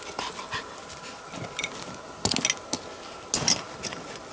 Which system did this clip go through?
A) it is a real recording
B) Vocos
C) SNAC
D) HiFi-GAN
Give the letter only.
A